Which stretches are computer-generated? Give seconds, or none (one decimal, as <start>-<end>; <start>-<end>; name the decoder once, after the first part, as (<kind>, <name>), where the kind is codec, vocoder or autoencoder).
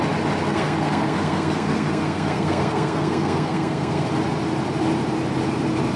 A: 0.5-4.1 (codec, SNAC)